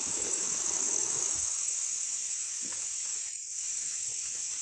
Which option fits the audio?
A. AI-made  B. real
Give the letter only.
A